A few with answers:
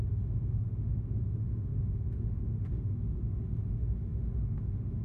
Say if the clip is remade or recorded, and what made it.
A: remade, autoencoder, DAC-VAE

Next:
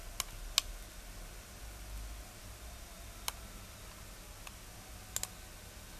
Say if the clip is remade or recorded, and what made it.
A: recorded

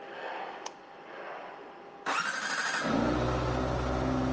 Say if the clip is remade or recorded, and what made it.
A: recorded